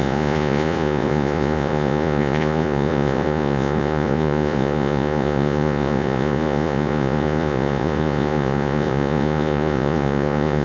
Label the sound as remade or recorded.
remade